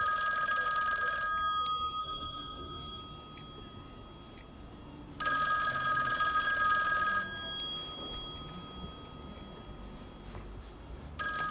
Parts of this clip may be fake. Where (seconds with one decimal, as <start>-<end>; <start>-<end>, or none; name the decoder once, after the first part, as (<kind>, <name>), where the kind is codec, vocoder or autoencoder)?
2.0-3.0 (codec, SNAC)